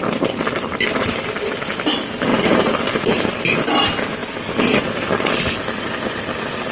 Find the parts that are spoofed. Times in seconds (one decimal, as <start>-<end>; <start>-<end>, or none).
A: none